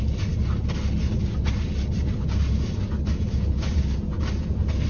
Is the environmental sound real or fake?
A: real